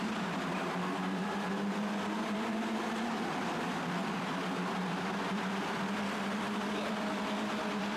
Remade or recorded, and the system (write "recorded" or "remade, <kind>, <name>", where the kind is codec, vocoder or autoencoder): remade, vocoder, BigVGAN v2